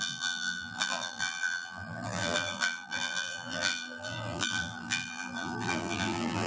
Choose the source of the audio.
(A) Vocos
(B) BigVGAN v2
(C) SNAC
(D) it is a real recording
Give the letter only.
B